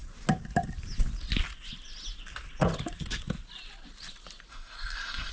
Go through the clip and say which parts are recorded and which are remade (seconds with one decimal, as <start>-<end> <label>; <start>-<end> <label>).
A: 0.0-4.5 recorded; 4.5-5.3 remade